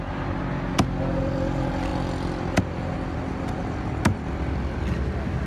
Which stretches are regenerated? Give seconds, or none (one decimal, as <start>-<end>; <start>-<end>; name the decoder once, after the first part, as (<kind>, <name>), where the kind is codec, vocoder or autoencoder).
none